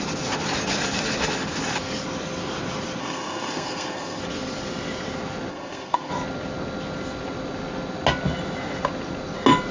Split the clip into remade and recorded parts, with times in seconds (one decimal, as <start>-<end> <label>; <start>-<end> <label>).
0.0-3.0 recorded; 3.0-4.2 remade; 4.2-5.5 recorded; 5.5-6.1 remade; 6.1-9.7 recorded